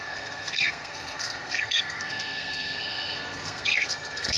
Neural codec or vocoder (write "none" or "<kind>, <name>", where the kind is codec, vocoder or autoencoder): codec, SNAC